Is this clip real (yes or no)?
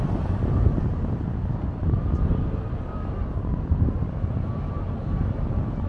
yes